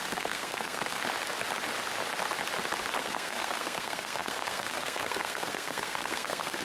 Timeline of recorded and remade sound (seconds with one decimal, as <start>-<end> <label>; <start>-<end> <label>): 0.0-1.0 remade; 1.0-3.0 recorded; 3.0-6.6 remade